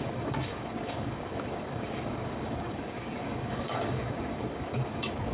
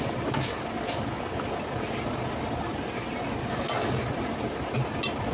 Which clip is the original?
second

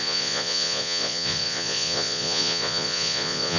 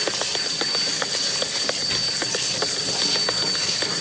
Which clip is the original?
second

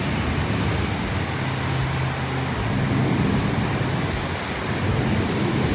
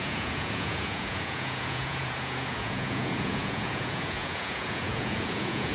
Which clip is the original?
first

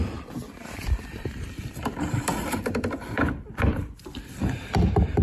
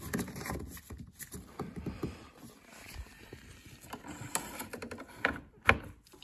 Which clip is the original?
second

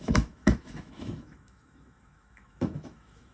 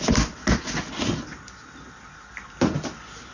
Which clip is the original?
second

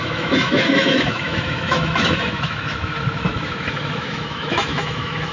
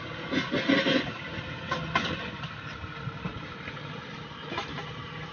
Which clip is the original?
second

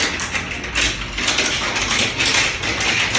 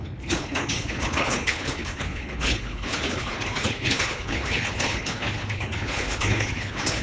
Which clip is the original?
first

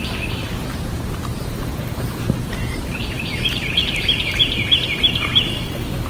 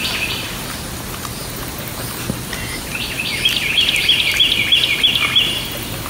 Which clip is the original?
second